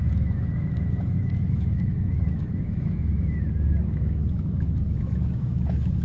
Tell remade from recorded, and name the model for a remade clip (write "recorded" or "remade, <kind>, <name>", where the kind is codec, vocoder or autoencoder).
remade, autoencoder, DAC-VAE